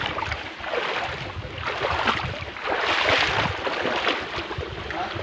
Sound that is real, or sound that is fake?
real